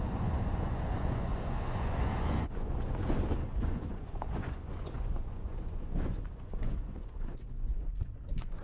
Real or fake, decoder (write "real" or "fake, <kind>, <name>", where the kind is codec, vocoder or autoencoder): fake, vocoder, Vocos